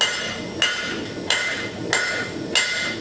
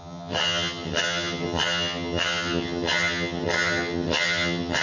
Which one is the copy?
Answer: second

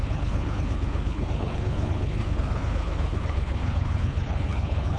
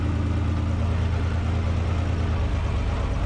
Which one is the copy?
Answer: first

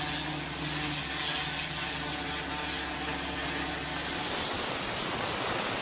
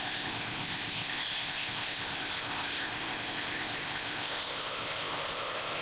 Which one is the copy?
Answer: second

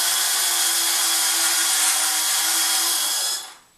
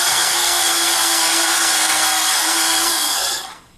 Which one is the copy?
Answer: second